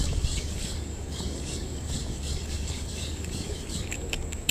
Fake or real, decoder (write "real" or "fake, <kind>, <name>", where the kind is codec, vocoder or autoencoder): fake, codec, DAC